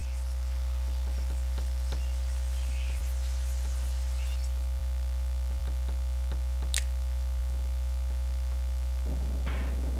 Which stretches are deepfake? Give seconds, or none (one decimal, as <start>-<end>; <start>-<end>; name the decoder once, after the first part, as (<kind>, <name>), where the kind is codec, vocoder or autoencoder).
none